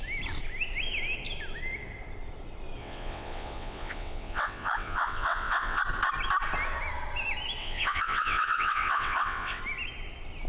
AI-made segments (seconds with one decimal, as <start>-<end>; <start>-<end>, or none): 2.8-5.8; 7.6-9.6